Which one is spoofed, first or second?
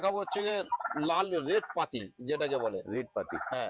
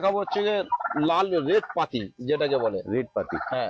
first